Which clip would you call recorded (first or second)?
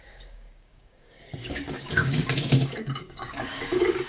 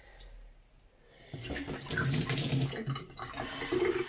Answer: second